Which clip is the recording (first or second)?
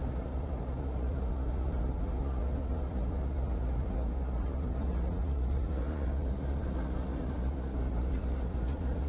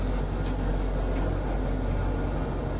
second